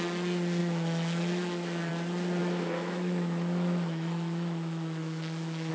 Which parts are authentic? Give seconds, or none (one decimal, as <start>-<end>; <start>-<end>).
0.0-0.6; 1.9-2.4